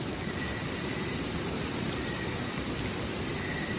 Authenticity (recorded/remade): recorded